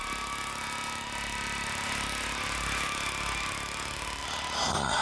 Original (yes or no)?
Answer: yes